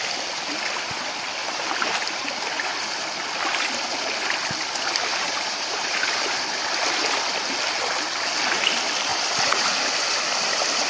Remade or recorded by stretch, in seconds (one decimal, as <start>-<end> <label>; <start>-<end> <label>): 0.0-1.4 recorded; 1.4-2.3 remade; 2.3-5.1 recorded; 5.1-6.8 remade; 6.8-10.9 recorded